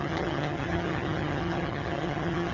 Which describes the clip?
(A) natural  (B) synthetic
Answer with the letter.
B